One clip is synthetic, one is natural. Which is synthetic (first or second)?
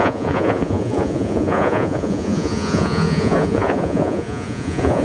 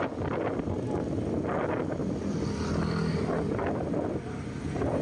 first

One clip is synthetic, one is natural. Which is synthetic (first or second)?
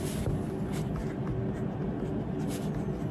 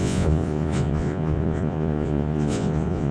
second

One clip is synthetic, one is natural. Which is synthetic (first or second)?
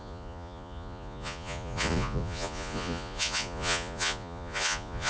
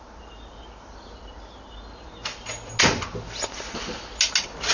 first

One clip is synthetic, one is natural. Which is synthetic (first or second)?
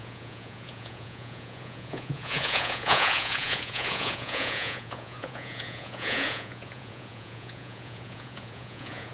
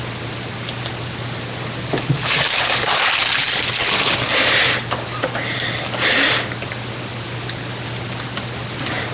first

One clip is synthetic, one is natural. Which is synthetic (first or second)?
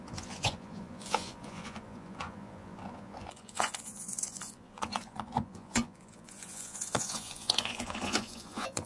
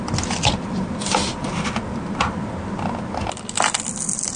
first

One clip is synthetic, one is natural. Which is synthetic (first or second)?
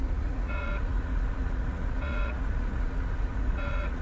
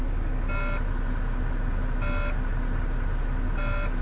first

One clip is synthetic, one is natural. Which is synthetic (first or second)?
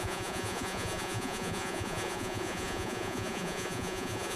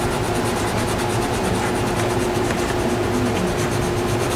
first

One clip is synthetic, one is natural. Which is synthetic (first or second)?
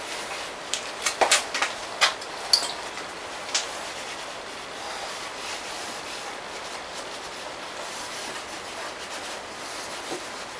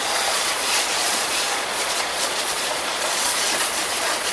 second